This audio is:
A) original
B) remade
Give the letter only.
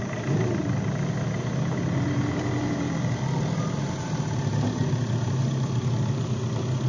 A